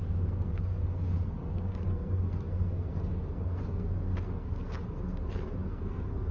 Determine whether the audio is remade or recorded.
remade